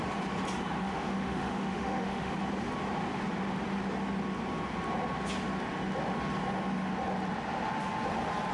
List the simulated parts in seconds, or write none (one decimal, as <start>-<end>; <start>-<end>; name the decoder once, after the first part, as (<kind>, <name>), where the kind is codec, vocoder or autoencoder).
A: 0.8-2.3 (autoencoder, DAC-VAE)